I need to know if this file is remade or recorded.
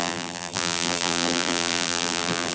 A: remade